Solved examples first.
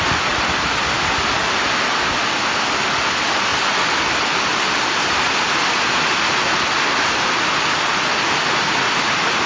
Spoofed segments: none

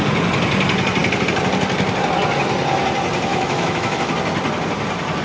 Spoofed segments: 3.3-4.1 (autoencoder, DAC-VAE)